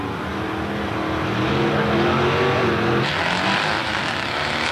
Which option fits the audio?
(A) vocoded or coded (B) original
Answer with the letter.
B